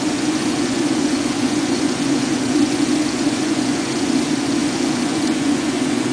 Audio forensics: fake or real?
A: fake